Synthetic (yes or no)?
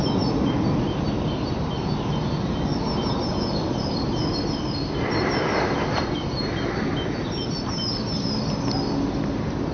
no